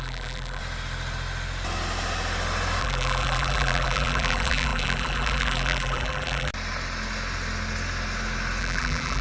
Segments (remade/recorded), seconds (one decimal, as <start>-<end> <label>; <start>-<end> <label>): 0.0-0.6 remade; 0.6-2.8 recorded; 2.8-6.5 remade; 6.5-8.6 recorded; 8.6-9.2 remade